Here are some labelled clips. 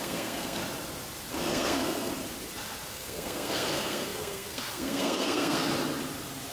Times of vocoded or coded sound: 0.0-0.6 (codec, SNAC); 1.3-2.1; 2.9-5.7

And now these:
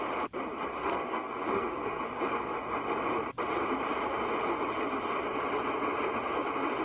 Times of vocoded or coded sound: 0.8-2.0 (codec, SNAC)

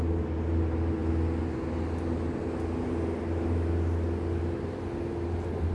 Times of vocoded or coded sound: none

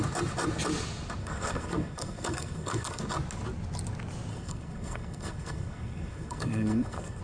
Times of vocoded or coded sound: 1.2-3.0 (codec, SNAC); 4.3-7.2

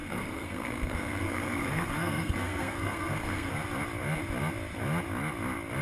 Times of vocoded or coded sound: 0.0-3.5 (codec, SNAC)

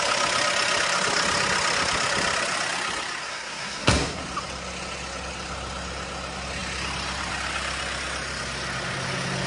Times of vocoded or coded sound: 3.2-4.2 (codec, SNAC)

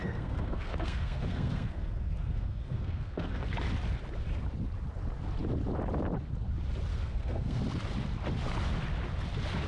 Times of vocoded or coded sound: 0.0-3.5 (codec, SNAC); 6.9-7.6